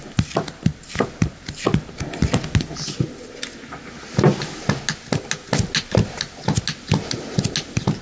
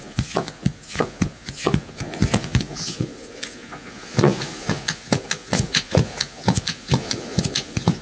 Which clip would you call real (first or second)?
first